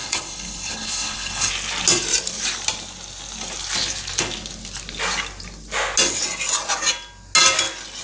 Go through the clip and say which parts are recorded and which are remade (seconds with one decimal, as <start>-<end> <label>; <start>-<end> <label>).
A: 0.0-1.5 remade; 1.5-8.0 recorded